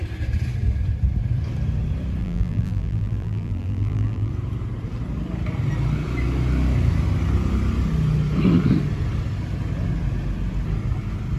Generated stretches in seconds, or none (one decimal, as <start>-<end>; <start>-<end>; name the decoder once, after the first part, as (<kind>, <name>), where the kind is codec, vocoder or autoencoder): 2.2-4.3 (vocoder, BigVGAN v2)

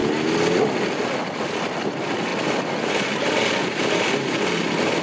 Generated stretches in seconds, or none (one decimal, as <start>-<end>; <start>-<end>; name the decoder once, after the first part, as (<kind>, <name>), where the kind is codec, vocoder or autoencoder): none